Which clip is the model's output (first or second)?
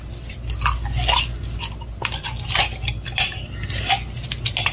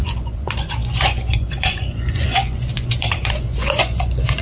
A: second